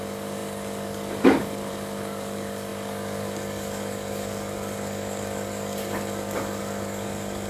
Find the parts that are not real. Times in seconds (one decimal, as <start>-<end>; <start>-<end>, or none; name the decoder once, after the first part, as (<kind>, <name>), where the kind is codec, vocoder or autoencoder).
0.0-7.5 (codec, DAC)

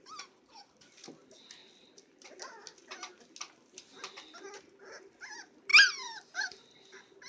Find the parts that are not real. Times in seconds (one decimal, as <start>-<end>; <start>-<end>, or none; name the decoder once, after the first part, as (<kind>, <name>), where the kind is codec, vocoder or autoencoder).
5.7-6.7 (vocoder, BigVGAN v2)

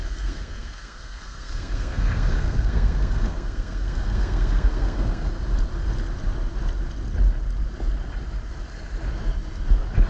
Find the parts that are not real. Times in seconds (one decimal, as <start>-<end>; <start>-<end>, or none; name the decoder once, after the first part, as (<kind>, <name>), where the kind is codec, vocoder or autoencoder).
0.0-5.3 (codec, SNAC)

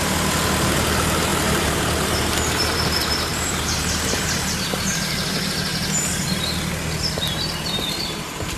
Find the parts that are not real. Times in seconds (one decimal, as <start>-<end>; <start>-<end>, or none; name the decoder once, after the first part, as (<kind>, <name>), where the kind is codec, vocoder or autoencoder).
0.0-5.7 (vocoder, BigVGAN v2); 7.1-8.6

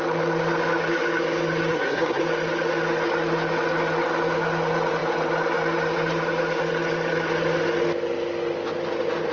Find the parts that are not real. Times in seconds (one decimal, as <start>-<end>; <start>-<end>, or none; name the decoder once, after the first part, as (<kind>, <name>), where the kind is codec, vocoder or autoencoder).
1.7-2.2 (codec, SNAC)

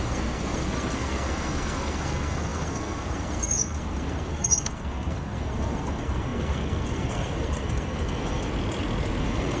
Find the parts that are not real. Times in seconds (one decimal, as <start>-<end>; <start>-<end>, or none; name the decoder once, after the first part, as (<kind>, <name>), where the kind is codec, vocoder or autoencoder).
0.0-8.5 (codec, SNAC); 9.2-9.6

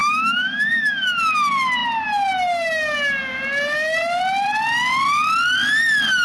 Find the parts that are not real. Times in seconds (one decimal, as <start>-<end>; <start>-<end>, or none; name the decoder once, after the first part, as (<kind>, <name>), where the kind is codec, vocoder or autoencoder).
0.0-1.2 (autoencoder, DAC-VAE)

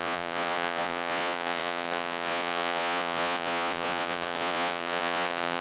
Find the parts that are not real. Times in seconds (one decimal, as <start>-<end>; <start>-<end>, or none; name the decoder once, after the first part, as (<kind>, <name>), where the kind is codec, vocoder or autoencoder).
0.0-5.6 (vocoder, Vocos)